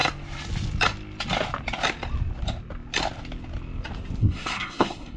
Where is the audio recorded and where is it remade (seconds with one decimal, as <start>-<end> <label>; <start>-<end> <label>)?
0.0-4.2 recorded; 4.2-5.2 remade